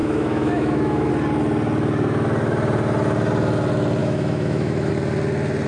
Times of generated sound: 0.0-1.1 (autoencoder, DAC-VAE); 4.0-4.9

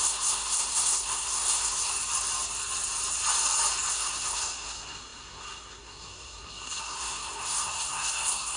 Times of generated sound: 0.0-1.9 (codec, SNAC); 3.9-8.6

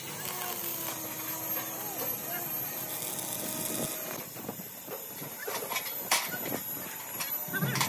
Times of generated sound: none

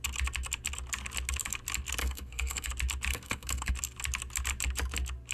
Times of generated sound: 2.0-2.7 (codec, SNAC); 3.1-3.7